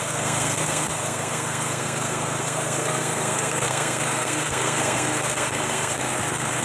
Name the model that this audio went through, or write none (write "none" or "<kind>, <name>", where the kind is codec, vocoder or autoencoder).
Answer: codec, SNAC